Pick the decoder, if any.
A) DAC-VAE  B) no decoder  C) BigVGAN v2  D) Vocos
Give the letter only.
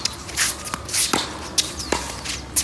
B